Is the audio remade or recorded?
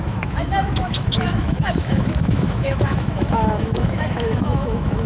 remade